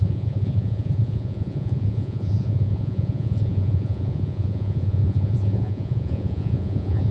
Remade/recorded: remade